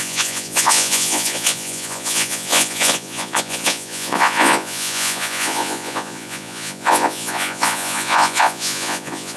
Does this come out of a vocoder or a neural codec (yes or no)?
yes